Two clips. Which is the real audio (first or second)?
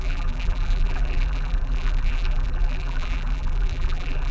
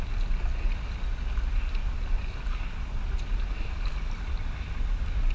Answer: second